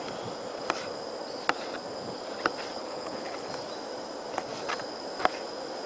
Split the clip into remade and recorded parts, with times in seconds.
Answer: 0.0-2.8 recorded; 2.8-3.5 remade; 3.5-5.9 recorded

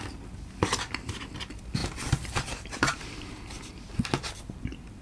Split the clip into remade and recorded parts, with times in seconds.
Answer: 0.0-1.8 recorded; 1.8-3.9 remade; 3.9-5.0 recorded

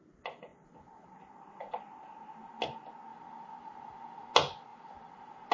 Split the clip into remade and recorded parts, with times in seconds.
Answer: 0.0-3.1 recorded; 3.1-4.3 remade; 4.3-4.7 recorded; 4.7-5.5 remade

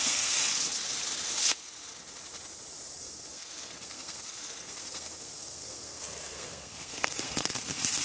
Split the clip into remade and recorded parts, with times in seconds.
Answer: 0.0-0.4 remade; 0.4-3.0 recorded; 3.0-8.0 remade

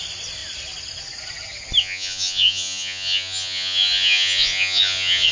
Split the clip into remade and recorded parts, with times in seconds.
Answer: 0.0-1.8 recorded; 1.8-5.3 remade

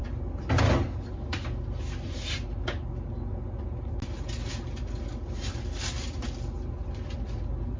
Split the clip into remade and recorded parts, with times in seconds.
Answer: 0.0-7.8 recorded

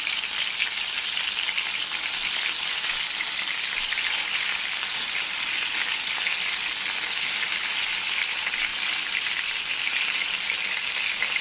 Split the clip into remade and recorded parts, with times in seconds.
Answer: 0.0-8.7 recorded; 8.7-9.5 remade; 9.5-11.4 recorded

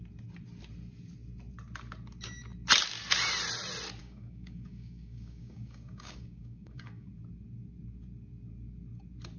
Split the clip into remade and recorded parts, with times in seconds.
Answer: 0.0-4.0 recorded; 4.0-7.1 remade; 7.1-9.4 recorded